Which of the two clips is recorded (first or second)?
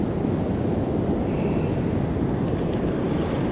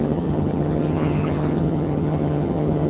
first